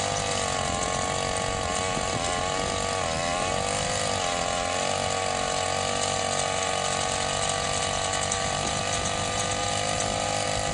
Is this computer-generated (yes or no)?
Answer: no